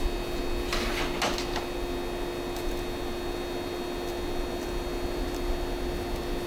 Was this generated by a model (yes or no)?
no